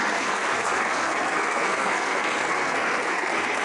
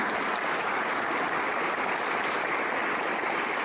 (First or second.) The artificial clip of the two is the first